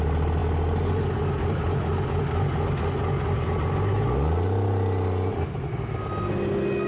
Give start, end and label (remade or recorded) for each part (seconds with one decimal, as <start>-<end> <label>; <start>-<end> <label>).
0.0-6.9 recorded